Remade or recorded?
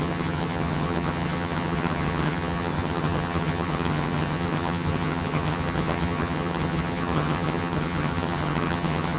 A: remade